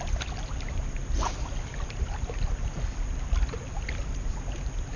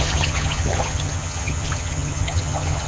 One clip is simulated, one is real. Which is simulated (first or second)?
second